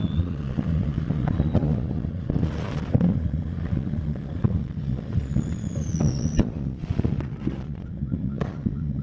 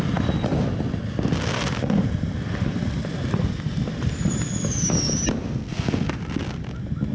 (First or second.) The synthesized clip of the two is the first